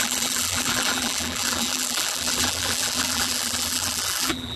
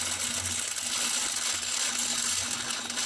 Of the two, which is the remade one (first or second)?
first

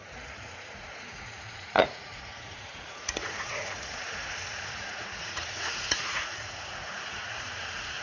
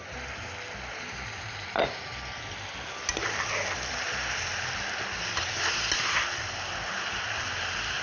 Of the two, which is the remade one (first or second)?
first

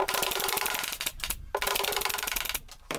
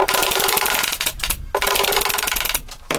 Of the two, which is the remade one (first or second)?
first